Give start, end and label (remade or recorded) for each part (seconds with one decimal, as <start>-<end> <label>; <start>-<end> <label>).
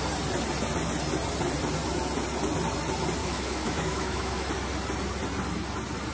0.0-3.2 recorded; 3.2-4.5 remade; 4.5-6.1 recorded